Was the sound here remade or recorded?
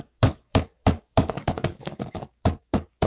remade